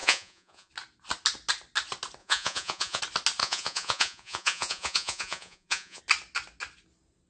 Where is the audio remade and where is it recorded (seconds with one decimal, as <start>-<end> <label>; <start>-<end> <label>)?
0.0-0.7 remade; 0.7-2.2 recorded; 2.2-3.0 remade; 3.0-3.4 recorded; 3.4-6.0 remade; 6.0-7.3 recorded